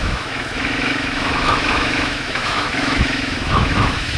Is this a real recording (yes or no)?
no